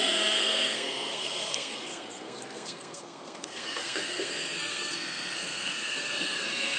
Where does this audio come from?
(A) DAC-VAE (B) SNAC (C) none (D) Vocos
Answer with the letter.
B